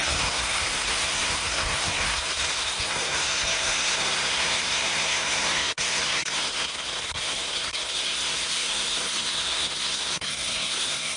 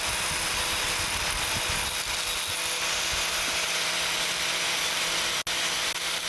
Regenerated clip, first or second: first